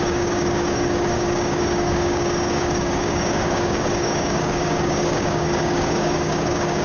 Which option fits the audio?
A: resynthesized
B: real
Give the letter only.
A